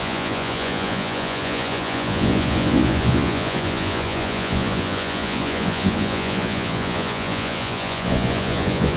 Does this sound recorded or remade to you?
remade